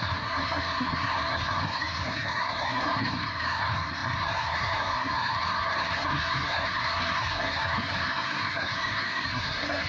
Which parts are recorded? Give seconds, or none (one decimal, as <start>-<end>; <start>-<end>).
none